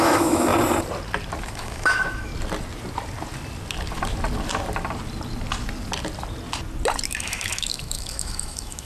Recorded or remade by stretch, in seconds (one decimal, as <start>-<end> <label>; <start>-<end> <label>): 0.0-0.5 remade; 0.5-1.4 recorded; 1.4-2.3 remade; 2.3-7.1 recorded; 7.1-8.8 remade